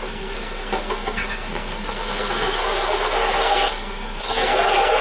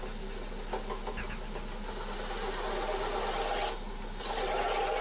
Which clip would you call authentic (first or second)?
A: second